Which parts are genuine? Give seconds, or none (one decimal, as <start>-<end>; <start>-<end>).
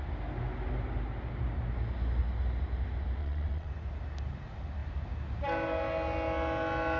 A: 0.0-3.2; 3.7-7.0